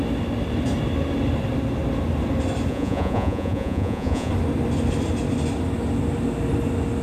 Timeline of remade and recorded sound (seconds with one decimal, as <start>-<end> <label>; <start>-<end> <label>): 0.0-2.7 recorded; 2.7-4.3 remade; 4.3-7.0 recorded